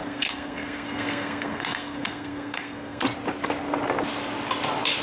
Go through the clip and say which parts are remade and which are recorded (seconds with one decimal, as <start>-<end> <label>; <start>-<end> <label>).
0.0-3.0 remade; 3.0-5.0 recorded